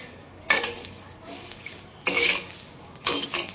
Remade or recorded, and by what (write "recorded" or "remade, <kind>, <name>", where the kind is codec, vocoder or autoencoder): remade, codec, DAC